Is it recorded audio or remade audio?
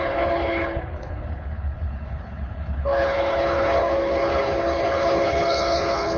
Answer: remade